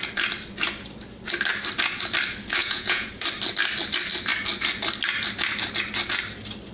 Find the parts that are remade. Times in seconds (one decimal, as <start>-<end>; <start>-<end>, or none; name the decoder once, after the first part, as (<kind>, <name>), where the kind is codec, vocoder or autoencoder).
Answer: 2.6-3.1 (vocoder, Vocos)